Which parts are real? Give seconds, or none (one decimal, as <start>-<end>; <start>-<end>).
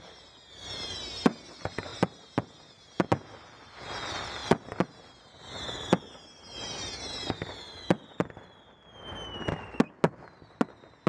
0.0-11.1